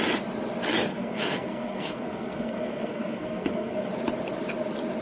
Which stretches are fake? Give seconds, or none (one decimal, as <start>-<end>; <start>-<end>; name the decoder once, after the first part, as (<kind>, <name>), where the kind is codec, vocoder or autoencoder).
0.9-3.9 (codec, SNAC)